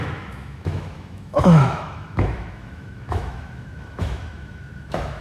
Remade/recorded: remade